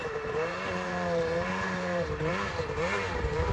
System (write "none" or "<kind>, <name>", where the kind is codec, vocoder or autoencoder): vocoder, BigVGAN v2